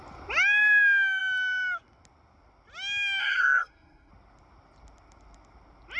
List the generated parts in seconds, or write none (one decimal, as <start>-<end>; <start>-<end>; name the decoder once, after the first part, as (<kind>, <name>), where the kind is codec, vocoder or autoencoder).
3.2-4.1 (codec, SNAC)

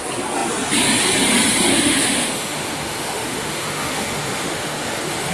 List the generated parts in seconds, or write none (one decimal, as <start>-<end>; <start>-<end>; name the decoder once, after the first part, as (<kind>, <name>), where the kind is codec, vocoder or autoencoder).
1.7-5.3 (autoencoder, DAC-VAE)